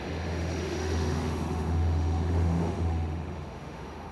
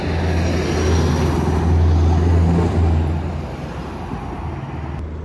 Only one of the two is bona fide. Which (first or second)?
second